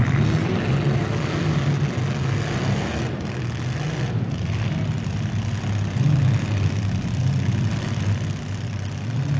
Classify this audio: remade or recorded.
recorded